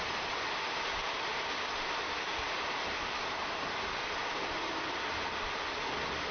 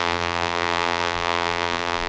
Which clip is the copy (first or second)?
second